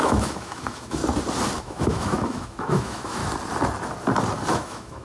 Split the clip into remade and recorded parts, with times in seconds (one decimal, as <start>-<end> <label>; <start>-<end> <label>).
0.0-1.0 remade; 1.0-1.6 recorded; 1.6-3.2 remade; 3.2-4.5 recorded; 4.5-5.0 remade